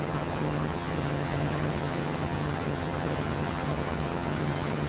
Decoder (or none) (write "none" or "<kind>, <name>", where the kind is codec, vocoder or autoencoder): vocoder, HiFi-GAN